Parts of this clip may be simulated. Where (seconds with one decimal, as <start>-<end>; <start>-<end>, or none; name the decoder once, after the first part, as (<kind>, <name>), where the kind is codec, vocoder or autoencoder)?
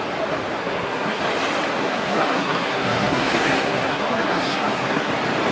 0.6-1.2 (codec, SNAC); 1.8-5.1